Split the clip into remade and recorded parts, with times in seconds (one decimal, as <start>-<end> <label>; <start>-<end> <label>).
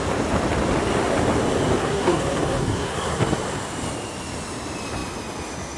0.0-1.8 recorded; 1.8-3.2 remade; 3.2-5.8 recorded